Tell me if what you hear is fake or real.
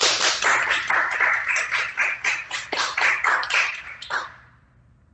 real